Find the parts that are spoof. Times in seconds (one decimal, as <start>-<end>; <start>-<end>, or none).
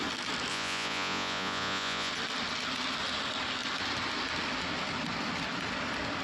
0.5-2.1